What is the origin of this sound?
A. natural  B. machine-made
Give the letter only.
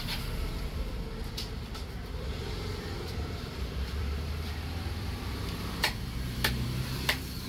B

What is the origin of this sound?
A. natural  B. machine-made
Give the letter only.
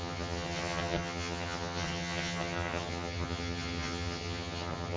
B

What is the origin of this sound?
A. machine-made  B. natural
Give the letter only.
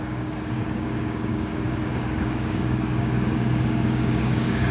A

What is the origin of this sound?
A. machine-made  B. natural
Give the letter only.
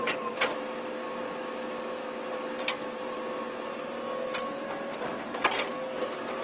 B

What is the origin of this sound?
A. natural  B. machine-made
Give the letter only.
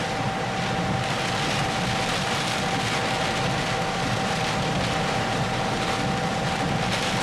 A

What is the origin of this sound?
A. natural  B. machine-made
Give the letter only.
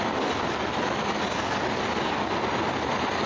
A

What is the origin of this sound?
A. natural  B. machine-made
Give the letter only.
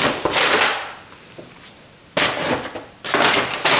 A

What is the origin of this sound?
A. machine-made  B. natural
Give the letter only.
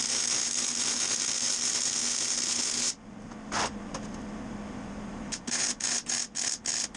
B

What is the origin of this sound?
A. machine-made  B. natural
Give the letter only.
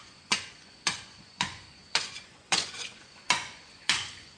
A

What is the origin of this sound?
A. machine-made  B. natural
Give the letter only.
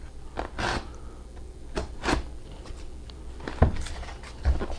B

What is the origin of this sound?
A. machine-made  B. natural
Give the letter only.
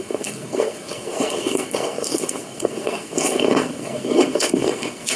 A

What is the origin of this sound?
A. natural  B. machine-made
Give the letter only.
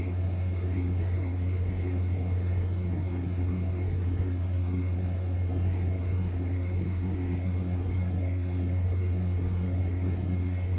B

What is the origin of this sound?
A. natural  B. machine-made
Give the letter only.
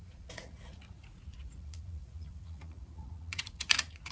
B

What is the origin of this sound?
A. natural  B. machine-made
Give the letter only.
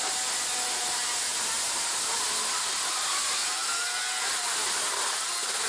A